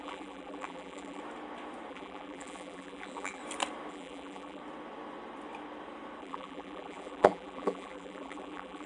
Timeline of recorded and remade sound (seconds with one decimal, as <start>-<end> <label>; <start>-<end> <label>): 0.0-1.2 remade; 1.2-1.9 recorded; 1.9-3.4 remade; 3.4-3.9 recorded; 3.9-4.6 remade; 4.6-6.2 recorded; 6.2-8.9 remade